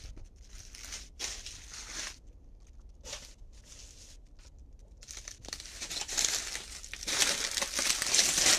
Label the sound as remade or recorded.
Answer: recorded